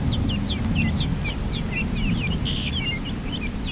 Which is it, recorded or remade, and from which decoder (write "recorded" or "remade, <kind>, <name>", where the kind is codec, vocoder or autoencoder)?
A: recorded